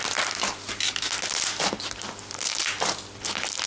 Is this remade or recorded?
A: recorded